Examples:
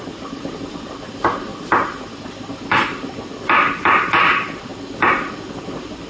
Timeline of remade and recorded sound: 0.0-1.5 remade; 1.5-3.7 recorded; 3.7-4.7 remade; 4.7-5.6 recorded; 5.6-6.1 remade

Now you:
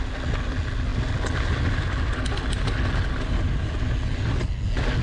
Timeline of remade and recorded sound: 0.0-5.0 recorded